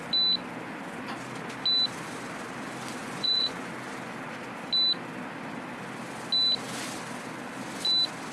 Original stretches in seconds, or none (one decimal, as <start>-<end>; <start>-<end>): 0.0-3.0; 3.7-8.3